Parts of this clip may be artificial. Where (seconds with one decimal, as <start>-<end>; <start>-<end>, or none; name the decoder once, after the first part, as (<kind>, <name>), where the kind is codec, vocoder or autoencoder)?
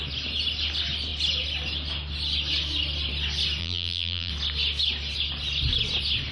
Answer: 3.6-4.3 (vocoder, BigVGAN v2)